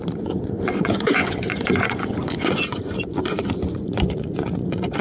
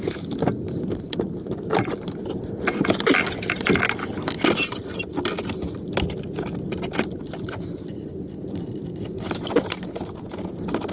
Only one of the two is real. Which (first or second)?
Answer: second